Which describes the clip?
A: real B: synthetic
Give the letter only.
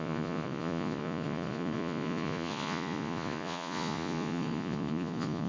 B